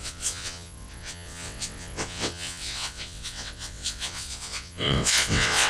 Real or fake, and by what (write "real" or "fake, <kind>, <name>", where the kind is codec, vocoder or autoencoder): fake, vocoder, WaveNeXt